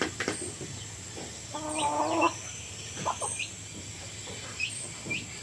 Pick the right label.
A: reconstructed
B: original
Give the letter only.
A